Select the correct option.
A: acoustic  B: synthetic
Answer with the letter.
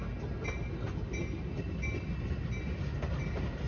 A